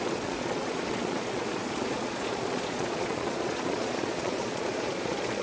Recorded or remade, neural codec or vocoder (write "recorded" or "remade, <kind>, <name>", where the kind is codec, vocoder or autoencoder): remade, vocoder, Vocos